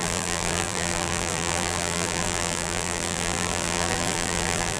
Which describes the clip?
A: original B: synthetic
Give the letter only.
B